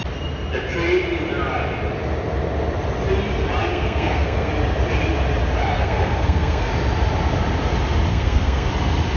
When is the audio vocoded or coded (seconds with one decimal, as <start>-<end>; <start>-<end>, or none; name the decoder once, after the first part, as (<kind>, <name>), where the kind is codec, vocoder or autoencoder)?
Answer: 3.7-4.5 (codec, SNAC); 5.7-6.7; 8.1-8.7